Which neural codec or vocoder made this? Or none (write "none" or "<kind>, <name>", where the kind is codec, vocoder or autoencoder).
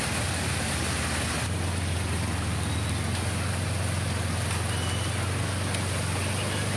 none